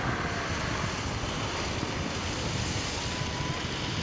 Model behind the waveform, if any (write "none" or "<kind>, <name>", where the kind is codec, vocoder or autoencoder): none